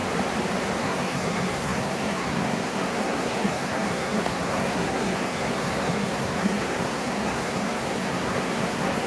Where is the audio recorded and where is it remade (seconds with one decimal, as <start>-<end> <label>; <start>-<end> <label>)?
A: 0.0-0.8 recorded; 0.8-9.1 remade